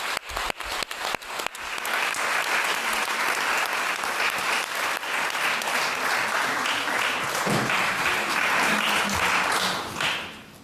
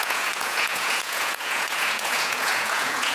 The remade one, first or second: second